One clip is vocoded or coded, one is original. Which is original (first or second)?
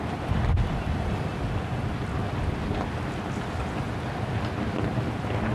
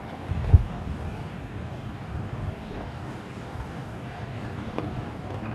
first